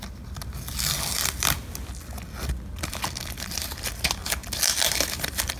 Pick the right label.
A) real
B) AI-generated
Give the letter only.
A